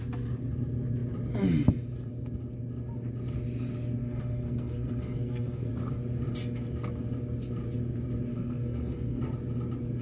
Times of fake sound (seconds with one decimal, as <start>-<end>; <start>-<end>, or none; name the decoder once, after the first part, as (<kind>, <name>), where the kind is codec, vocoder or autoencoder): 4.0-5.7 (codec, SNAC); 8.3-9.2